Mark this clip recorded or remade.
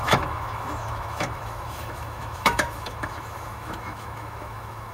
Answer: remade